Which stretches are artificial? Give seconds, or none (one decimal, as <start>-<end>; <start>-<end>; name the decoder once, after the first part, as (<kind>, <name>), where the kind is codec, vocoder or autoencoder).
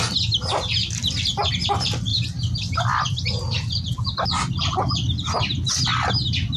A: 0.8-1.5 (vocoder, BigVGAN v2); 2.1-6.1